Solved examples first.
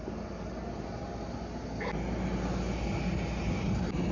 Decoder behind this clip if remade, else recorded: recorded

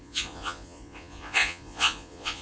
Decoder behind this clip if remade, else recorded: remade, vocoder, Vocos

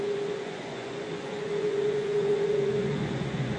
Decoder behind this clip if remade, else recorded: remade, vocoder, Vocos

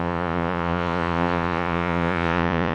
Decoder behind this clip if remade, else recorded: remade, vocoder, Vocos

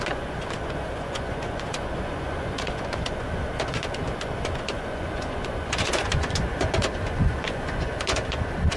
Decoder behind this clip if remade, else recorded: remade, vocoder, Vocos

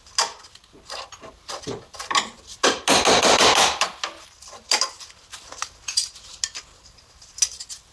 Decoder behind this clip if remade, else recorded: recorded